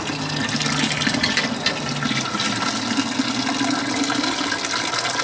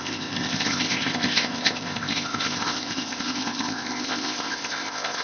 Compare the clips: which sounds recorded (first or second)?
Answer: first